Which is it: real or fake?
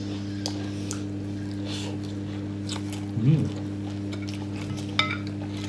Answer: real